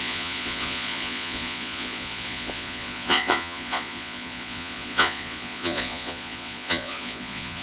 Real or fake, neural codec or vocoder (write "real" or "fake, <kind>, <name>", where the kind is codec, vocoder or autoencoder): fake, vocoder, Vocos